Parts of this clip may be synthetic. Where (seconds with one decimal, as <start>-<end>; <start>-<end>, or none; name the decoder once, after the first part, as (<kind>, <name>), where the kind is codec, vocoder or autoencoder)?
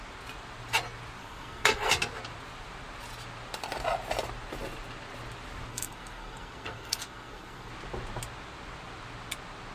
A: 1.2-1.9 (codec, SNAC); 5.7-7.7